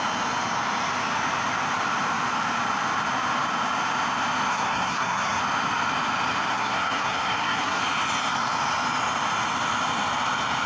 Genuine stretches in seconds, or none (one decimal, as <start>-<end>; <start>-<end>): 0.0-4.5; 5.4-6.5; 7.8-10.7